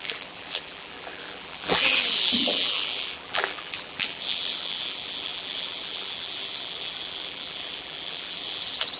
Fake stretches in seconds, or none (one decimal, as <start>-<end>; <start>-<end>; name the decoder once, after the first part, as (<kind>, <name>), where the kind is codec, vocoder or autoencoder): 0.0-9.0 (vocoder, BigVGAN v2)